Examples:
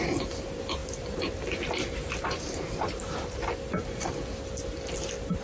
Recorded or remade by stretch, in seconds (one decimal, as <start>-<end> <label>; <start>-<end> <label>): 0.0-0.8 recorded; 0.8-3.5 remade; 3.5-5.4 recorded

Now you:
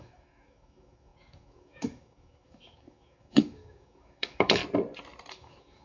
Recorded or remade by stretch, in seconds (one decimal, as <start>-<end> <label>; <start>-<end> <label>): 0.0-4.6 remade; 4.6-5.3 recorded; 5.3-5.8 remade

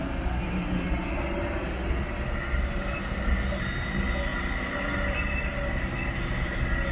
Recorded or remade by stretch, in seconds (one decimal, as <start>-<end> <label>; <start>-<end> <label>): 0.0-4.3 recorded; 4.3-6.9 remade

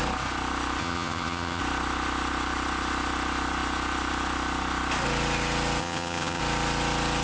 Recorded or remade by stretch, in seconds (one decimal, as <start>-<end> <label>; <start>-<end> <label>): 0.0-0.8 recorded; 0.8-1.6 remade; 1.6-5.8 recorded; 5.8-6.4 remade; 6.4-7.2 recorded

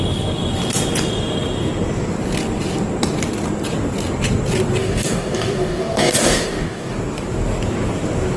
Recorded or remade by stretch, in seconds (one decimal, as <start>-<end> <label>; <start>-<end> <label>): 0.0-4.8 recorded; 4.8-7.0 remade; 7.0-8.4 recorded